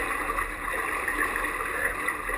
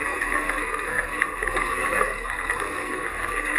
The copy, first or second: second